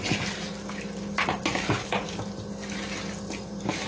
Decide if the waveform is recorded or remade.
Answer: recorded